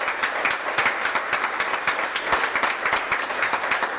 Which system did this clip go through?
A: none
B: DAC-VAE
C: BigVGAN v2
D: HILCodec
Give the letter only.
A